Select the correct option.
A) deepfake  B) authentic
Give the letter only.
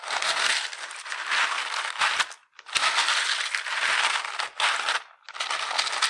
B